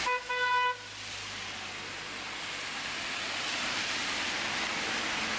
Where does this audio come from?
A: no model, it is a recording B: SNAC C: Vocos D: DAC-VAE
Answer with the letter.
A